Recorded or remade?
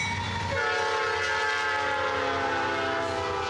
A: recorded